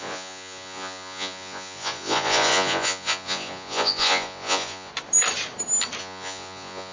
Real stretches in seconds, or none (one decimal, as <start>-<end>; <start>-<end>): 4.9-6.0

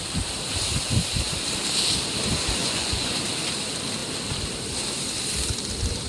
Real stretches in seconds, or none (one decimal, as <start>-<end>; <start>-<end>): 0.0-2.6; 3.2-6.1

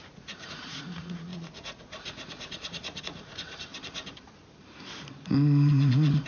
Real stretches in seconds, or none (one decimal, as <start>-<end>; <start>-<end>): 3.7-5.7

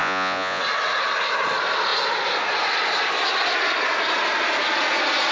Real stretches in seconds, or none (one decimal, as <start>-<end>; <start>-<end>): 0.6-5.3

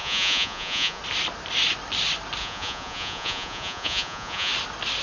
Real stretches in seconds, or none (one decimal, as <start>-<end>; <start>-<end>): 1.0-2.4; 4.5-5.0

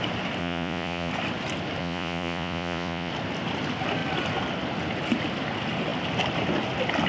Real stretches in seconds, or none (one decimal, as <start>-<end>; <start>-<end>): 0.0-0.4; 1.1-1.8; 3.1-7.1

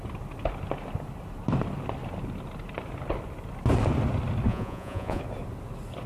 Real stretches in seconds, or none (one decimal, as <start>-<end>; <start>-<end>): 0.0-4.5; 5.2-6.1

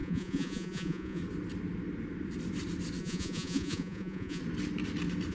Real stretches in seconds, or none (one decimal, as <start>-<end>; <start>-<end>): 1.2-3.0; 4.4-5.3